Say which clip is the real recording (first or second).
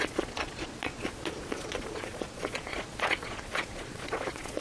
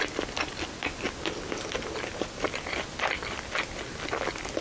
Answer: second